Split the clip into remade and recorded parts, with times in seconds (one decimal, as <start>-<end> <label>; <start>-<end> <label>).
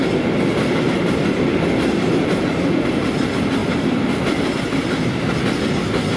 0.0-1.2 remade; 1.2-3.6 recorded; 3.6-4.6 remade; 4.6-6.2 recorded